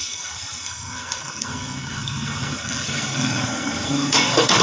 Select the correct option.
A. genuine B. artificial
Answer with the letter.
B